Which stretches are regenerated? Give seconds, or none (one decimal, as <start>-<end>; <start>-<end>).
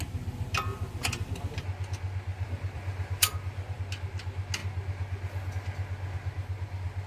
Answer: 0.7-1.3; 2.3-3.8